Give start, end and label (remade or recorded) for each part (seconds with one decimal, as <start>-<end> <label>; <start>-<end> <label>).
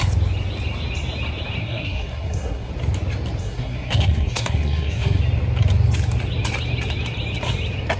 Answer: 0.0-1.6 recorded; 1.6-2.7 remade; 2.7-3.4 recorded; 3.4-5.2 remade; 5.2-8.0 recorded